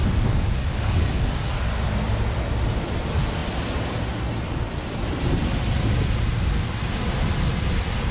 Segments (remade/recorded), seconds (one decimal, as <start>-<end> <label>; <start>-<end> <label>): 0.0-1.5 remade; 1.5-8.1 recorded